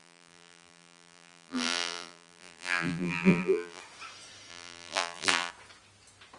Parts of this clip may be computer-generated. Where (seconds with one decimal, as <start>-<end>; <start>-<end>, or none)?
0.0-3.8; 4.5-5.5